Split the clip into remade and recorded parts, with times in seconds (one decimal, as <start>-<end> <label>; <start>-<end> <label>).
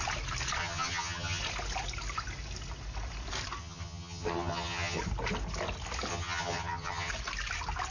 0.0-0.6 recorded; 0.6-1.4 remade; 1.4-3.6 recorded; 3.6-5.0 remade; 5.0-6.1 recorded; 6.1-7.1 remade; 7.1-7.9 recorded